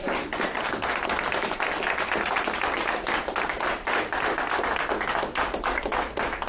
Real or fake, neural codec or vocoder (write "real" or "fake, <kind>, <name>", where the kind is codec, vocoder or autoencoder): real